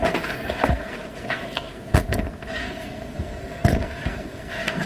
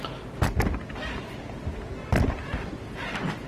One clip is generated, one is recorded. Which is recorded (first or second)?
second